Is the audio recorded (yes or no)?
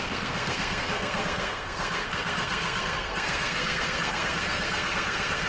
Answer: no